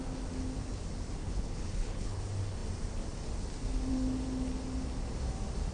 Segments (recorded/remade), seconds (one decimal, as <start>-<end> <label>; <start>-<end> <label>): 0.0-1.2 recorded; 1.2-2.2 remade; 2.2-5.7 recorded